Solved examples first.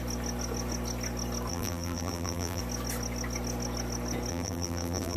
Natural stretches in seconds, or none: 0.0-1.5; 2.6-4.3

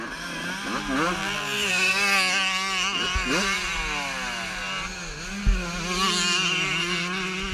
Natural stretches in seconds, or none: 0.0-1.2; 1.7-7.5

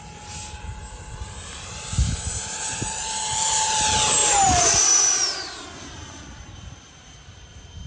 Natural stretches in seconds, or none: none

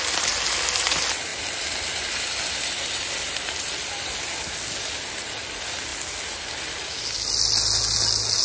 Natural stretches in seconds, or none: 0.0-8.4

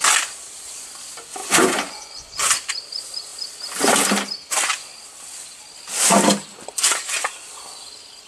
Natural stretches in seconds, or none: 0.0-1.4; 2.5-8.3

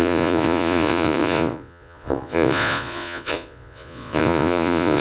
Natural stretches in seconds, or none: none